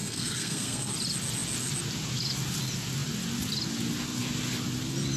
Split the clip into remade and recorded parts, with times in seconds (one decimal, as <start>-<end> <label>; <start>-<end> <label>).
0.0-0.9 remade; 0.9-5.2 recorded

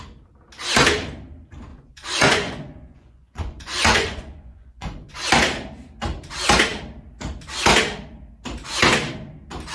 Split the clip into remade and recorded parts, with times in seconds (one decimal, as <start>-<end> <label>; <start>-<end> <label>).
0.0-1.7 recorded; 1.7-5.1 remade; 5.1-9.7 recorded

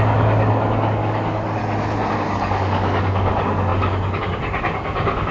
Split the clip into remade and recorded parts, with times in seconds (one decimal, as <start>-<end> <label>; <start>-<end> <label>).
0.0-1.6 remade; 1.6-2.1 recorded; 2.1-5.3 remade

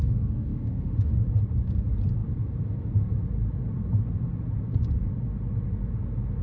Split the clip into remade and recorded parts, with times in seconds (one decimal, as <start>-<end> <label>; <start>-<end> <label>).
0.0-1.1 remade; 1.1-6.4 recorded

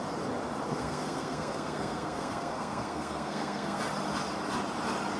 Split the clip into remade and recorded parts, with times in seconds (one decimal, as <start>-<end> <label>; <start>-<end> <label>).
0.0-0.7 recorded; 0.7-3.8 remade; 3.8-5.2 recorded

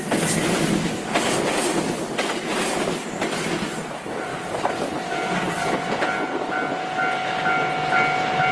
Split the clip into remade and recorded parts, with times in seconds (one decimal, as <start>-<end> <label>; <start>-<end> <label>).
0.0-4.3 recorded; 4.3-4.9 remade; 4.9-8.5 recorded